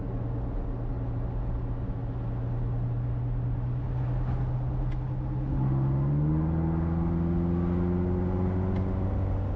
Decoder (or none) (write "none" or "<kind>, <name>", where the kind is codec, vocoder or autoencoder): none